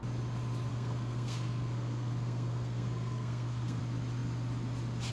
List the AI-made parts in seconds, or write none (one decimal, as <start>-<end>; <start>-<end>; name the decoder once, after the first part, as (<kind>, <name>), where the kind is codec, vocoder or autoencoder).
0.7-3.8 (codec, SNAC)